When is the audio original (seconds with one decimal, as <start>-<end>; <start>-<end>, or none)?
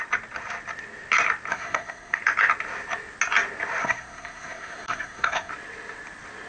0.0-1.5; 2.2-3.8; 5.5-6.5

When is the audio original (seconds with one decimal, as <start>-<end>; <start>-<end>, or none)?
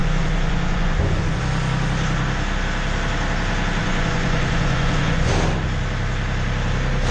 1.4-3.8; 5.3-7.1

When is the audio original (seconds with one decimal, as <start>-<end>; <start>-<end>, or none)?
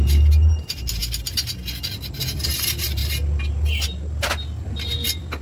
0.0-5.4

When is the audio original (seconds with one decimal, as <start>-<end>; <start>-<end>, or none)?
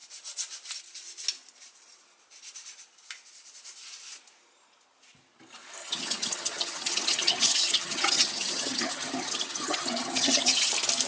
0.0-5.8; 10.7-11.1